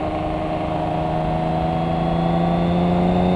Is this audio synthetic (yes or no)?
no